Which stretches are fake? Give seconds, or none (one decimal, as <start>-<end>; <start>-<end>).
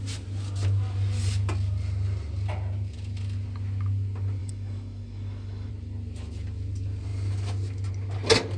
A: 4.4-5.7